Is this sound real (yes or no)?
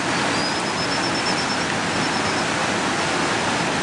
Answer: yes